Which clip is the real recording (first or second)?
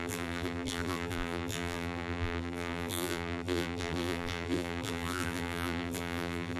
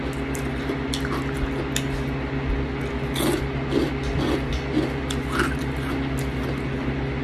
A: second